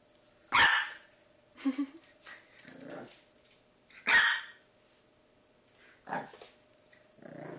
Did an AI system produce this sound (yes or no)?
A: no